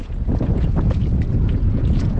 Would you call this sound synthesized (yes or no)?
yes